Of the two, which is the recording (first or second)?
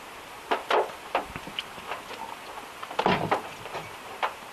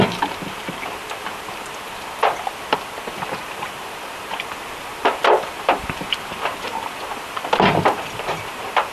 first